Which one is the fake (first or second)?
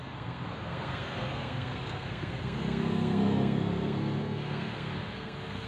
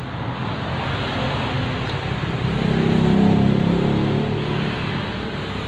first